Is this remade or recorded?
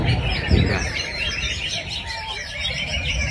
remade